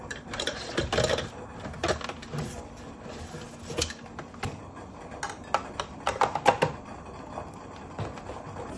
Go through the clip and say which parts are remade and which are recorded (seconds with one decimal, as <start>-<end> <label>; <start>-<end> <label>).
0.0-0.6 remade; 0.6-8.8 recorded